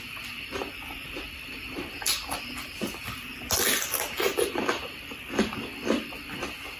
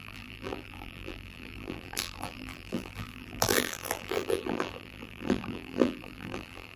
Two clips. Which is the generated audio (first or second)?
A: second